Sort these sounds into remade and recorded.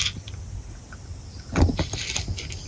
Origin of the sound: recorded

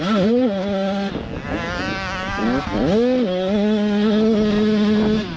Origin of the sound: recorded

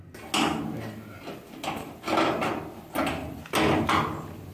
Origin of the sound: recorded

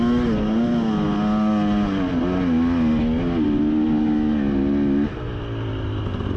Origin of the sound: recorded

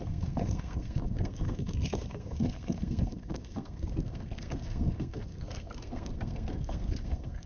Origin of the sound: remade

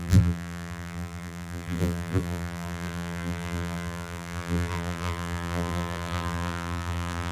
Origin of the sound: remade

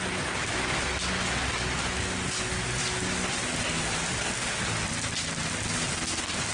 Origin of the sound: recorded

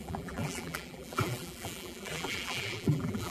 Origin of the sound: remade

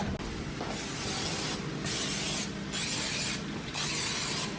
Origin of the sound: recorded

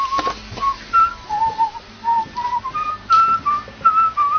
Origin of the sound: recorded